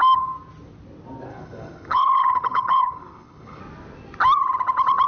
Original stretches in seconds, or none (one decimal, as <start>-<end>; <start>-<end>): 0.0-1.3; 3.6-5.1